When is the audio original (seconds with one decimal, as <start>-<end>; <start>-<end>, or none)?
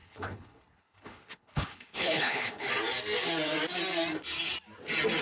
2.7-5.2